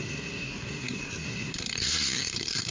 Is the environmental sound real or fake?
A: fake